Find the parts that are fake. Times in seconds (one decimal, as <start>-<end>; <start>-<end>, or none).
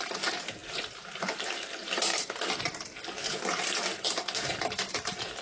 0.0-2.1; 2.6-3.0; 4.9-5.4